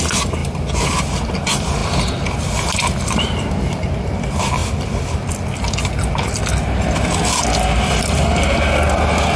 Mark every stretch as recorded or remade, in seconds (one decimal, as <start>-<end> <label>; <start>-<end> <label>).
0.0-9.4 recorded